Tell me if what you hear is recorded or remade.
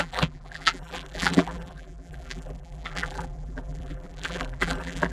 remade